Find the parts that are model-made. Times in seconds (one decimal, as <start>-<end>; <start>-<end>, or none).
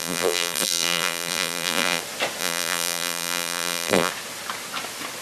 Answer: 0.0-2.0; 2.4-4.1